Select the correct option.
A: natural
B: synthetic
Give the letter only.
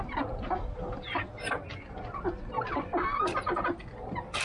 A